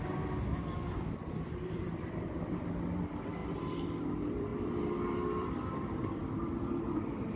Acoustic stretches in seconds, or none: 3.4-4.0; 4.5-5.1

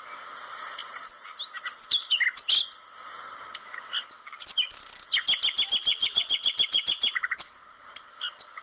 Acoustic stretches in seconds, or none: 0.0-5.9; 7.5-8.6

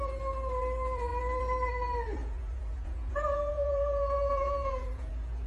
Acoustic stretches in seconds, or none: 0.0-2.2

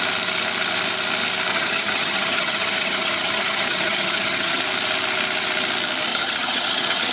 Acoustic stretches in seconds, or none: 0.0-1.5; 4.6-6.1